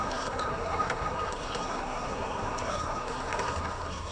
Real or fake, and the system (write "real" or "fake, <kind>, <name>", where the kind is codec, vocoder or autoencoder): fake, codec, SNAC